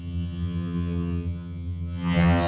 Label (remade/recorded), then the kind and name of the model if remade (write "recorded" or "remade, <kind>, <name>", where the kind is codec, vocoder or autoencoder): remade, vocoder, HiFi-GAN